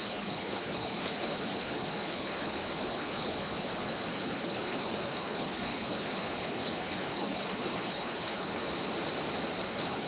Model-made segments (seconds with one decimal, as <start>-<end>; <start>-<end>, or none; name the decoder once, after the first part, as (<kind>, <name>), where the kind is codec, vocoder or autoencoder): 0.0-8.6 (codec, HILCodec); 9.6-10.1